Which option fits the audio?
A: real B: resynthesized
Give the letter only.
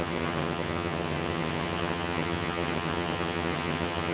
B